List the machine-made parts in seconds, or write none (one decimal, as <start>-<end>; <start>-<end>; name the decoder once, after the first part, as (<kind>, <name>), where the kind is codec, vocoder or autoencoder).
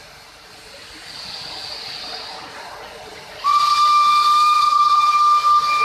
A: none